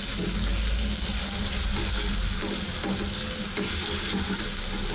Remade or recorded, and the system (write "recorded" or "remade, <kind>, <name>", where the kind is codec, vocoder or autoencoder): recorded